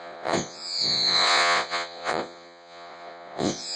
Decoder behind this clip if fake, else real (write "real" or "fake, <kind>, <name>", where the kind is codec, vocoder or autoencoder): fake, vocoder, Vocos